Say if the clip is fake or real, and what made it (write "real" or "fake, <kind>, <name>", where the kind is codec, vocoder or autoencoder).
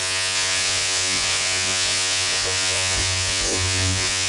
fake, vocoder, Vocos